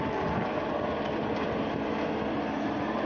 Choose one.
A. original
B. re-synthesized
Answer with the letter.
A